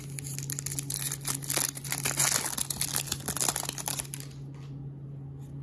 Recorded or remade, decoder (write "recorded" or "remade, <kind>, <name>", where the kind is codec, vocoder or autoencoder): recorded